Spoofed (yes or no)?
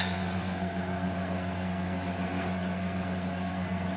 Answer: yes